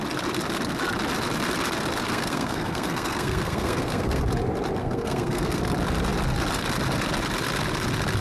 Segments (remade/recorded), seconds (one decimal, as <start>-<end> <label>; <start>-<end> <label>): 0.0-2.1 recorded; 2.1-4.2 remade; 4.2-4.8 recorded; 4.8-5.6 remade; 5.6-8.2 recorded